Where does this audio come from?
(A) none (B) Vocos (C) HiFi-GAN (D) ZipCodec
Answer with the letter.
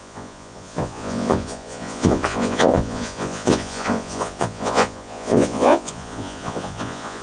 B